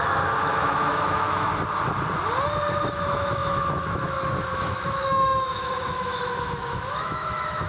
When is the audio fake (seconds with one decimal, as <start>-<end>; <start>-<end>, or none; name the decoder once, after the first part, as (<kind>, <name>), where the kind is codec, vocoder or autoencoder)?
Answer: 0.0-1.5 (autoencoder, DAC-VAE); 2.7-7.7